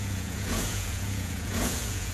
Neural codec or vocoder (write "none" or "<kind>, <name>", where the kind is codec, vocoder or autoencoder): vocoder, Vocos